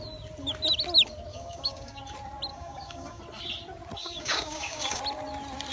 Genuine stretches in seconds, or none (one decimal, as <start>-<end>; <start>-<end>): 0.0-1.3; 2.0-2.5; 3.2-4.0; 5.0-5.7